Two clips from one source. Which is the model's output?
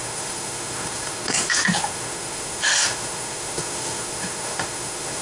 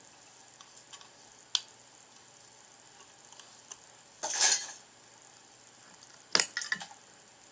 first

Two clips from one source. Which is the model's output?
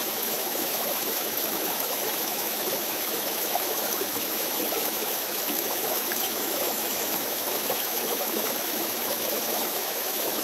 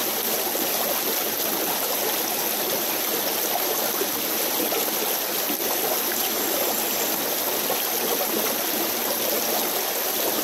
first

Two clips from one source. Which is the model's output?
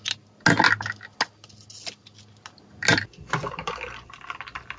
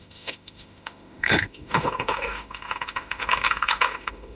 second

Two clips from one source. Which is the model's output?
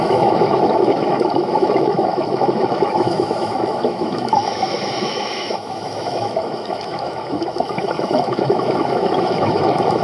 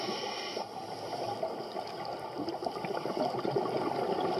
first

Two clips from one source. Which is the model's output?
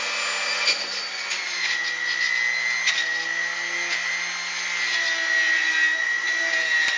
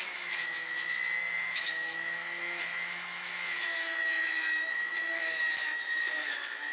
second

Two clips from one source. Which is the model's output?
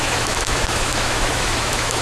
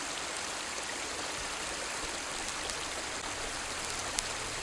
first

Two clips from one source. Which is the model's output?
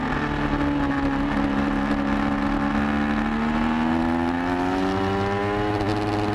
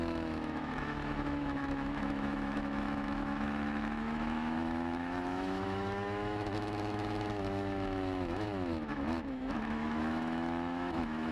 second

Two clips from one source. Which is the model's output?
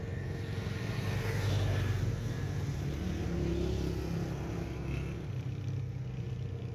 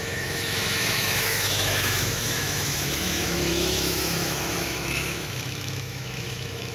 second